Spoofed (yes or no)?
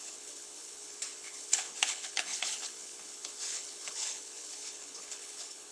yes